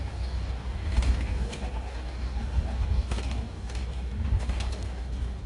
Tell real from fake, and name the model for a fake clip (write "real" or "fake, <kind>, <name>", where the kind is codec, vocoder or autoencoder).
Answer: fake, codec, DAC